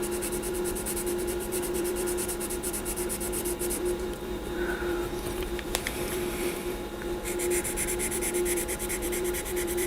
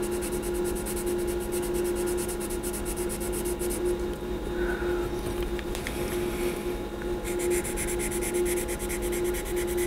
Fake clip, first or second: first